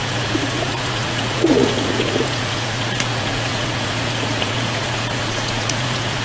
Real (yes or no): no